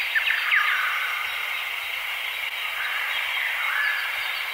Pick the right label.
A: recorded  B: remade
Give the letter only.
A